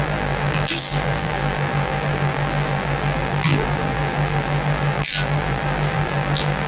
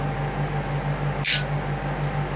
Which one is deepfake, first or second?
first